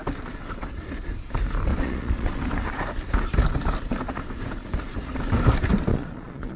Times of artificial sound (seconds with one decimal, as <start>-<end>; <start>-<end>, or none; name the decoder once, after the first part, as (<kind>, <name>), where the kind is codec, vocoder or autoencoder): 1.7-2.4 (vocoder, Vocos); 5.9-6.6